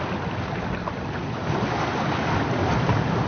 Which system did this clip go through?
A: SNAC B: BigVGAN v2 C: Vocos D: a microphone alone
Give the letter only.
D